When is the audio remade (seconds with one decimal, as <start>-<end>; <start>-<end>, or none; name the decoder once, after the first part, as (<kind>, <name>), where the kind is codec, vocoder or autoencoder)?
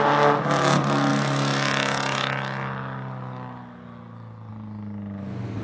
none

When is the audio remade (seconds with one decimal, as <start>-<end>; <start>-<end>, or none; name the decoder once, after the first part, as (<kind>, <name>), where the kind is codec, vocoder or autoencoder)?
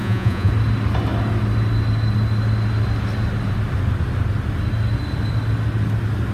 0.0-0.5 (vocoder, Vocos)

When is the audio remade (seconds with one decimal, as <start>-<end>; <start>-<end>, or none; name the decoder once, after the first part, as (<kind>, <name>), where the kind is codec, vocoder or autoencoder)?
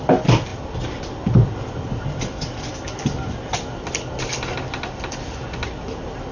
none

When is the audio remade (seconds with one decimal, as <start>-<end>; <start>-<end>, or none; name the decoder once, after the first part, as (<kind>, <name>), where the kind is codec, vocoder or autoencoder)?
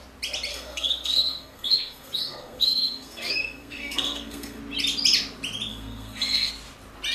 0.5-4.6 (codec, SNAC); 5.7-6.5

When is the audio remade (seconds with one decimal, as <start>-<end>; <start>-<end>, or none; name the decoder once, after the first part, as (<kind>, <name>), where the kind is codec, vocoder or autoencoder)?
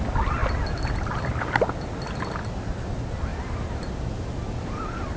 none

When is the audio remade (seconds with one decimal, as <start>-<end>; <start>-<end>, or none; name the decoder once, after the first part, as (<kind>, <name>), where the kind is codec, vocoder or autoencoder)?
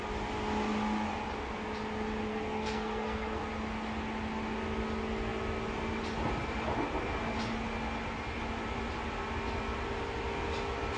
2.3-3.4 (codec, SNAC)